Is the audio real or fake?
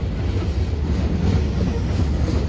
real